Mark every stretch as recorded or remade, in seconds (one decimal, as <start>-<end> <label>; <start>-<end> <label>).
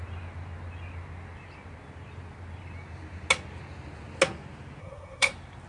0.0-4.8 recorded; 4.8-5.3 remade; 5.3-5.7 recorded